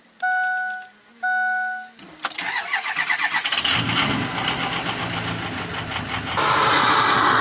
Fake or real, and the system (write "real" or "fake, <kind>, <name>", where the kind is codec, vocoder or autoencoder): real